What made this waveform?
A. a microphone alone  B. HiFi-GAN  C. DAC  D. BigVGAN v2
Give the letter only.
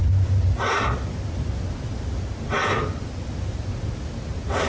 A